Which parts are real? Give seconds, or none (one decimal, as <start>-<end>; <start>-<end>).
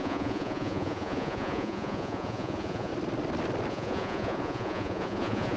2.9-3.7